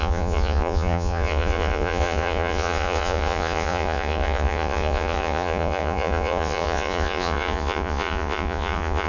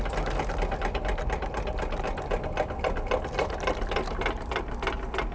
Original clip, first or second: second